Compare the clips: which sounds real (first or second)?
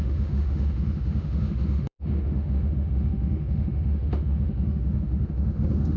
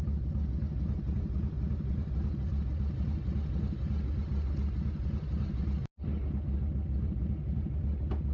second